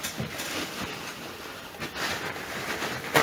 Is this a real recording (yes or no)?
yes